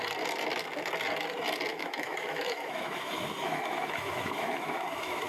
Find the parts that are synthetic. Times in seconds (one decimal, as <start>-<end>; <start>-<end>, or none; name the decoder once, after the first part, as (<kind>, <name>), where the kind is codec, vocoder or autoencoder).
1.7-5.3 (autoencoder, DAC-VAE)